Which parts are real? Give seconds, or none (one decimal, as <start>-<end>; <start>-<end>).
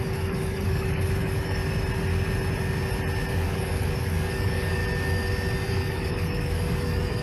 1.6-3.3; 4.8-5.7